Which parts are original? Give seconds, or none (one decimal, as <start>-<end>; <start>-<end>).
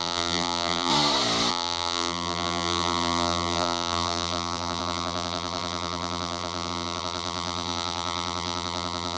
0.9-1.5